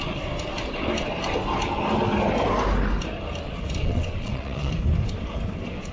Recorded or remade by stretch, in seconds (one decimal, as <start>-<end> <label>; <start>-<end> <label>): 0.0-3.8 recorded; 3.8-4.7 remade; 4.7-5.9 recorded